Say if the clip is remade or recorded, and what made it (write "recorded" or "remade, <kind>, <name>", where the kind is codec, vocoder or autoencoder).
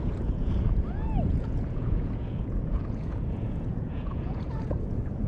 remade, vocoder, Vocos